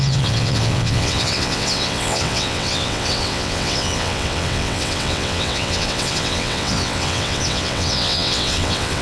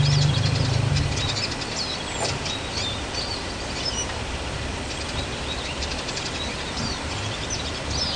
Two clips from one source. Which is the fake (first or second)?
first